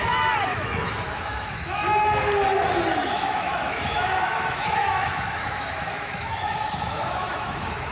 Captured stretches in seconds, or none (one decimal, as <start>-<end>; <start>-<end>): 0.0-0.5; 2.2-3.0